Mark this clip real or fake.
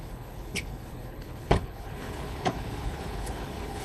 fake